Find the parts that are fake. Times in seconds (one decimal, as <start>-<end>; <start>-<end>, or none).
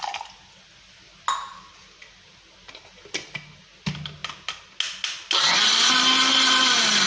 none